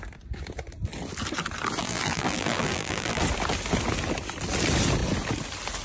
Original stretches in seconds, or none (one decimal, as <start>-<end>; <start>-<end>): 0.0-1.8; 3.2-5.8